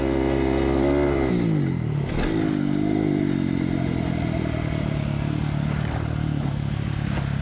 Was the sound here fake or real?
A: real